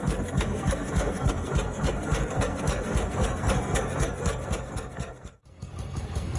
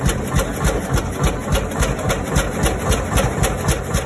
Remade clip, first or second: first